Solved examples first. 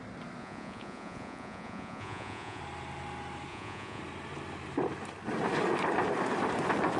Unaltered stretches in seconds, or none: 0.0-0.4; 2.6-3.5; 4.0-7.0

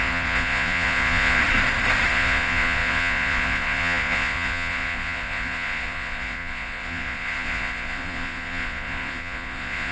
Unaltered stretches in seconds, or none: 1.4-2.1

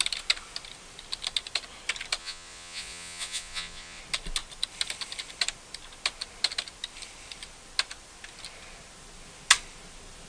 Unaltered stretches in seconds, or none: 0.0-2.2; 4.0-10.3

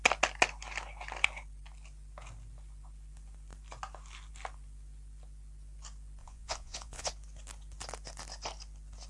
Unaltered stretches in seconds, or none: 0.0-6.2; 7.1-9.1

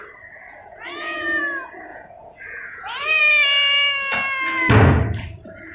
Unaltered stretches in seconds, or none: 0.0-0.6; 1.4-1.9; 3.2-5.7

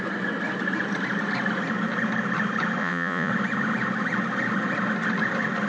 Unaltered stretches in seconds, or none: 0.0-2.8; 3.3-5.7

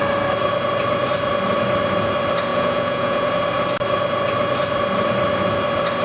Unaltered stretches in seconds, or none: 0.0-2.5; 3.3-6.0